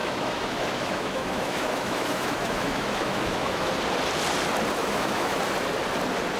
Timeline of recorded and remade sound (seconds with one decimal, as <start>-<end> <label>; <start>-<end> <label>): 0.0-3.7 remade; 3.7-4.8 recorded; 4.8-5.4 remade; 5.4-6.4 recorded